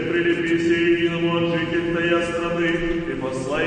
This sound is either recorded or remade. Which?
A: recorded